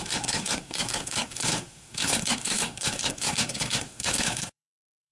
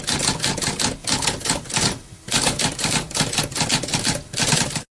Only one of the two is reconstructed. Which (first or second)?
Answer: first